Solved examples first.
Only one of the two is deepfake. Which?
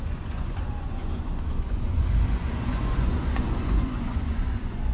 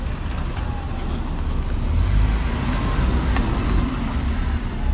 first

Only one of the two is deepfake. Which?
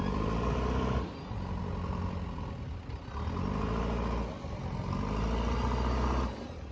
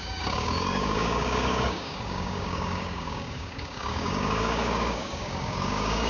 second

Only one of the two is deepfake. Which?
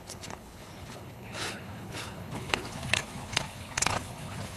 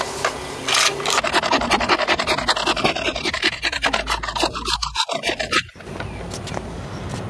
first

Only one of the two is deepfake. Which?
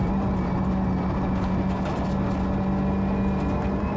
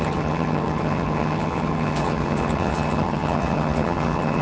second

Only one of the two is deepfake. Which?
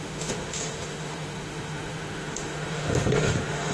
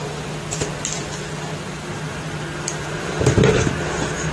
first